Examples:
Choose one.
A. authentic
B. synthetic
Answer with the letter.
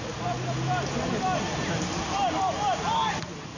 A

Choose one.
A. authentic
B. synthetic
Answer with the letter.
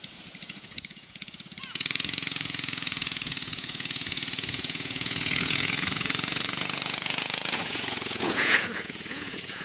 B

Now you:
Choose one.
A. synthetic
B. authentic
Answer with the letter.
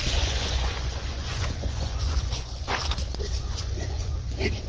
A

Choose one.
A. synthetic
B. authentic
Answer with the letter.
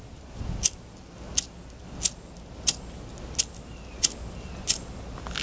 B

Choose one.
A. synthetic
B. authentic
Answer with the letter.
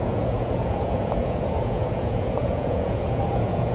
A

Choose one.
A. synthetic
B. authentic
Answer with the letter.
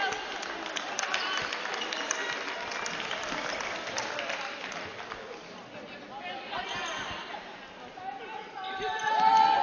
B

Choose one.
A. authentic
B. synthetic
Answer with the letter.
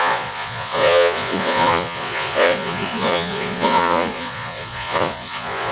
B